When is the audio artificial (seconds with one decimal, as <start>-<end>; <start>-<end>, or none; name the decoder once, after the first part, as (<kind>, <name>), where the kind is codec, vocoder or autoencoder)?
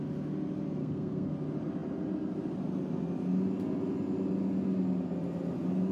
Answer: 0.8-1.3 (codec, SNAC)